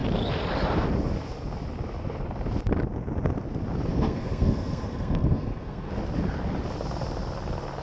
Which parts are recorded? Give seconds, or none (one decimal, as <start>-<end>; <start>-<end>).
0.0-3.9; 5.9-7.8